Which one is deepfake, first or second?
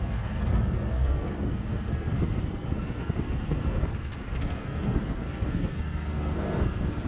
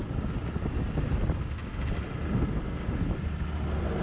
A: first